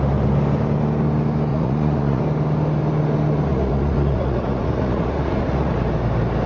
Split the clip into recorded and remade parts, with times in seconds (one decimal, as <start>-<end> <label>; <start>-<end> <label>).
0.0-1.5 recorded; 1.5-2.2 remade; 2.2-3.5 recorded; 3.5-5.7 remade; 5.7-6.5 recorded